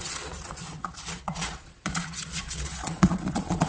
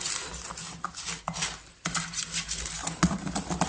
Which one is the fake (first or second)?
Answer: first